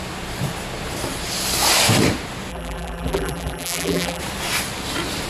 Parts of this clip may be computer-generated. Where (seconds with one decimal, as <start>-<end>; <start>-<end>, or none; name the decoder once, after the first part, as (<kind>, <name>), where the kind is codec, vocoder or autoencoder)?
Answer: 2.5-4.2 (vocoder, BigVGAN v2)